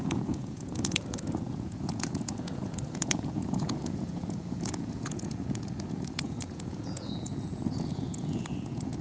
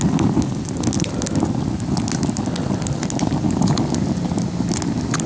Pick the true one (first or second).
second